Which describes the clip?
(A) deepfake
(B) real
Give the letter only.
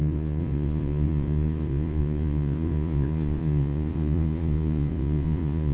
A